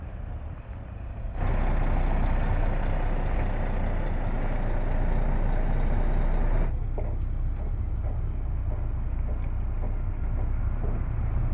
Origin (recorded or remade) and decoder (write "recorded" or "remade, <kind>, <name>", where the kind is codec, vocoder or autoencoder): recorded